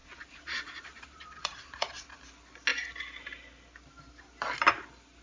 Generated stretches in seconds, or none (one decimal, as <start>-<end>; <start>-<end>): 0.0-2.2

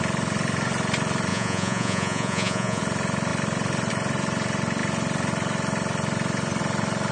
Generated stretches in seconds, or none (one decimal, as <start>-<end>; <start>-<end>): 1.3-2.8

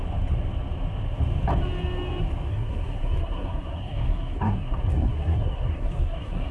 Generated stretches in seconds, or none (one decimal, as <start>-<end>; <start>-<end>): 2.5-6.5

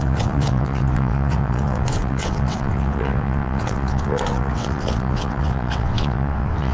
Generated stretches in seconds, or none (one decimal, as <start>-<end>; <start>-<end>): 0.0-6.7

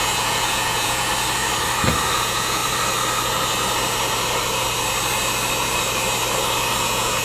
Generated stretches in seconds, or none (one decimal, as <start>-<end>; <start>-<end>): 0.0-1.1; 2.2-2.6; 6.8-7.2

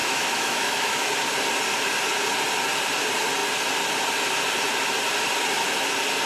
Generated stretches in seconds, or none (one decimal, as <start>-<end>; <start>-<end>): 0.0-1.1